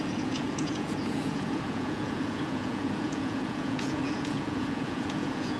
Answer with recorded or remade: remade